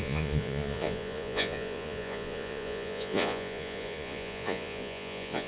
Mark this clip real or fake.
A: fake